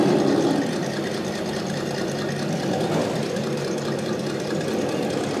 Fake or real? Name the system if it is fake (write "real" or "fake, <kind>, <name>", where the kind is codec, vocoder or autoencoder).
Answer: real